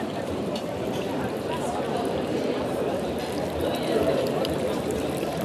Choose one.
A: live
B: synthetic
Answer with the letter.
B